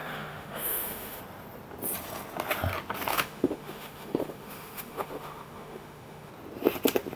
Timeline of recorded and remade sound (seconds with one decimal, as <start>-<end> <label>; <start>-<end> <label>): 0.0-1.2 remade; 1.2-3.1 recorded; 3.1-6.3 remade; 6.3-7.2 recorded